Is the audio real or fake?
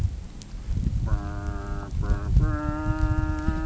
real